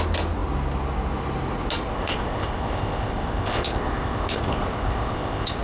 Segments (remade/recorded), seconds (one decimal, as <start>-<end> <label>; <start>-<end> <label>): 0.0-1.9 recorded; 1.9-5.6 remade

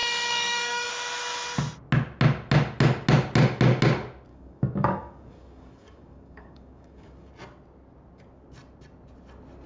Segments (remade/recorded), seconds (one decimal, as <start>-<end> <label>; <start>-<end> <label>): 0.0-0.9 remade; 0.9-4.3 recorded; 4.3-7.3 remade; 7.3-9.7 recorded